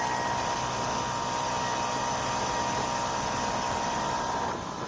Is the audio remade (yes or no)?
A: no